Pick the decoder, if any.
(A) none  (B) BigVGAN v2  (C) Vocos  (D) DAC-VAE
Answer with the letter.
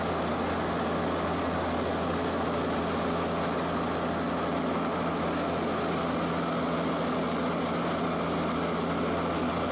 A